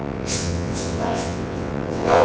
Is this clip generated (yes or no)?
yes